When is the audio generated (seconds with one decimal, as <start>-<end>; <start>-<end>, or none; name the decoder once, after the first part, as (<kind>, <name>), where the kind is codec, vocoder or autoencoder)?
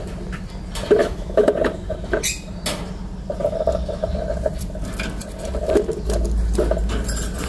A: 1.0-1.5 (autoencoder, DAC-VAE)